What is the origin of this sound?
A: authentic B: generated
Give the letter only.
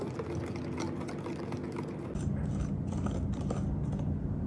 A